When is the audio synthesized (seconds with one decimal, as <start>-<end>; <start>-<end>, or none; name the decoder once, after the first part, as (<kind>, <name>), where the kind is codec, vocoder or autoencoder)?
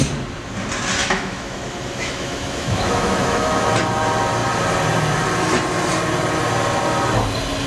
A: 1.0-3.7 (autoencoder, DAC-VAE)